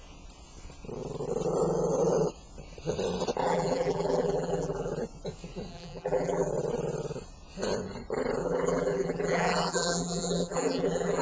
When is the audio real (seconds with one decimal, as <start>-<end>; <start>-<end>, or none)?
0.0-3.4; 4.9-5.7; 6.5-8.4